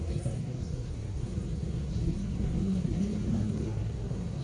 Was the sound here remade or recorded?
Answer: remade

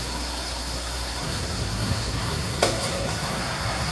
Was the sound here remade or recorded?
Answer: remade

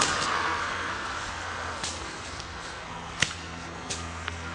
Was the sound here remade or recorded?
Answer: remade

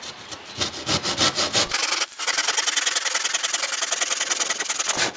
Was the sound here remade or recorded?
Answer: recorded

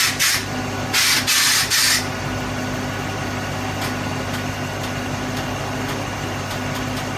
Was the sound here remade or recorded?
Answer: recorded